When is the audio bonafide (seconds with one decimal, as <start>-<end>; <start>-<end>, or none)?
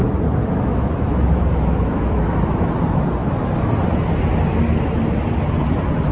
0.0-0.4; 2.7-6.1